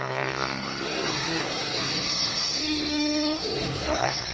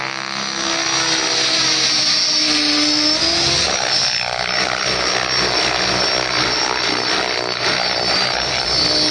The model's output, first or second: first